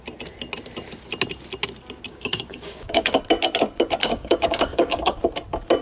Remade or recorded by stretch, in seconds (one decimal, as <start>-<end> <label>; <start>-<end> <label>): 0.0-2.1 recorded; 2.1-3.2 remade; 3.2-4.0 recorded; 4.0-5.2 remade; 5.2-5.8 recorded